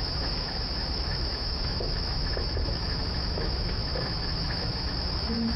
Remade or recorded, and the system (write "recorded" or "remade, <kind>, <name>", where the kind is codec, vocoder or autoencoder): remade, autoencoder, DAC-VAE